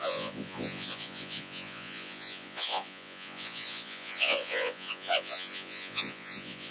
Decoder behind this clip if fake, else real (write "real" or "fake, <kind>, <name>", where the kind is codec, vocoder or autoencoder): fake, vocoder, Vocos